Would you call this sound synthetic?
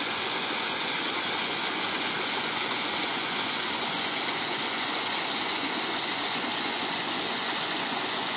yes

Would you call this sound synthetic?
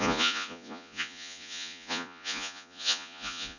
yes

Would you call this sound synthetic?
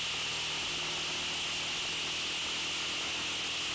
no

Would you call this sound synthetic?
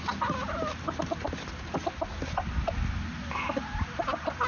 no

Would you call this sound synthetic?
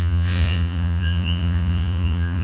yes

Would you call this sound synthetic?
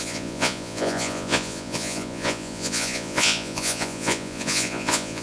yes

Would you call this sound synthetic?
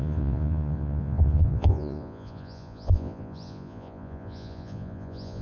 yes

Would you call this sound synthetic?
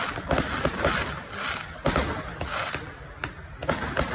no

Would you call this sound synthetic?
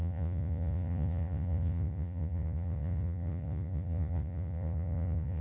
yes